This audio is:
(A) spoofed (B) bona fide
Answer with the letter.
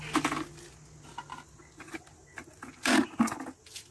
B